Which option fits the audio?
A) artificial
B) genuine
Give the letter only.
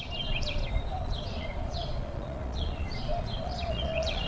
A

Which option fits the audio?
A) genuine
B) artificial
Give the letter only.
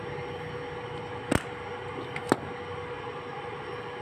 A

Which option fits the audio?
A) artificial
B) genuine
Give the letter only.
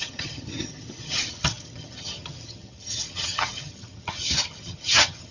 A